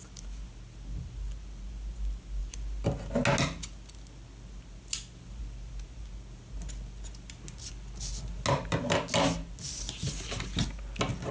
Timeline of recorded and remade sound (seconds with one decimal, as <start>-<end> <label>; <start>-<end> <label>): 0.0-11.3 recorded